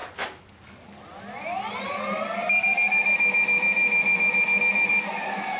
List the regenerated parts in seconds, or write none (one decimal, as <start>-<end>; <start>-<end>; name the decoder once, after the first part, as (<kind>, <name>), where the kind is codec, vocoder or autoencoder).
none